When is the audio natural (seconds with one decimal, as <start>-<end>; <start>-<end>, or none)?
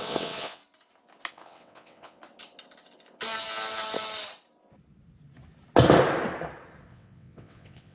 0.6-1.3; 2.2-6.9